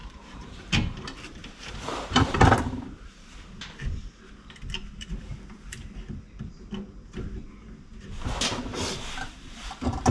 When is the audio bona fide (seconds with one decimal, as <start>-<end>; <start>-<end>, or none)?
3.5-10.1

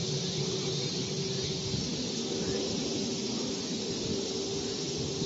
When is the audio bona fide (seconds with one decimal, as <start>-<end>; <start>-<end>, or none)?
1.1-5.3

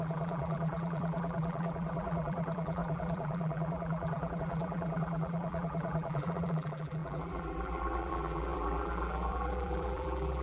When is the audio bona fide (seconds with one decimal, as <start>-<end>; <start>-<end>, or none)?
none

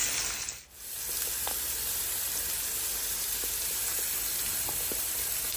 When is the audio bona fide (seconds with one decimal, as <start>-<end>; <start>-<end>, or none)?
0.0-1.2

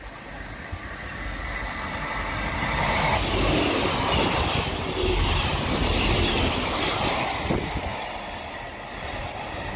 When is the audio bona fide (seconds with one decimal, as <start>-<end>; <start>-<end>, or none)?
0.0-9.8

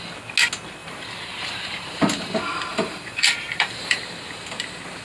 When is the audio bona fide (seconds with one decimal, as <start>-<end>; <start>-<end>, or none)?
0.0-0.8; 2.3-2.7; 4.0-5.0

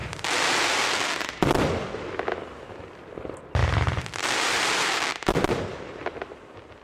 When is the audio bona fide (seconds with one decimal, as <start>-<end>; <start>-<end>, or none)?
0.0-3.6; 4.8-6.8